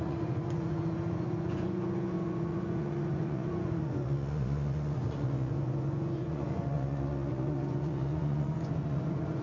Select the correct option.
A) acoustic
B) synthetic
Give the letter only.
B